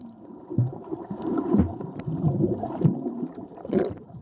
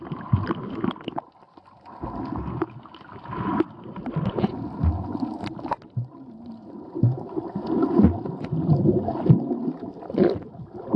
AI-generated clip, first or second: first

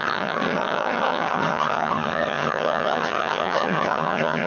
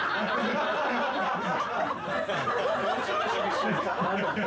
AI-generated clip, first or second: first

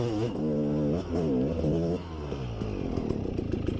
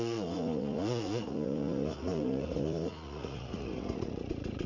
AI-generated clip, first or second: second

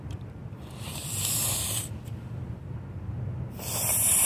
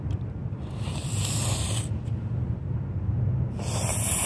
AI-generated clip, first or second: first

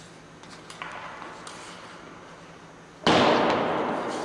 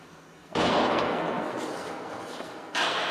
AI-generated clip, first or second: second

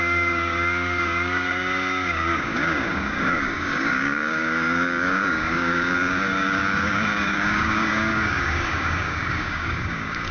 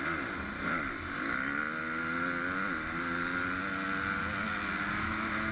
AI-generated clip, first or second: first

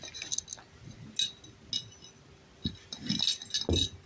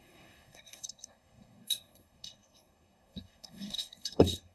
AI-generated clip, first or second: second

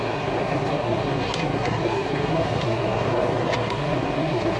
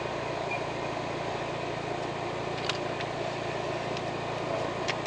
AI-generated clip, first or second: first